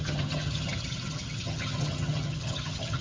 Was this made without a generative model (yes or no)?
no